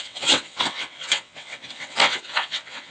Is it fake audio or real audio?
fake